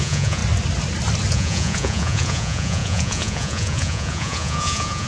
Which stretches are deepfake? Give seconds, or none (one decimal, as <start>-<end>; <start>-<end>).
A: 0.0-0.4; 1.3-5.1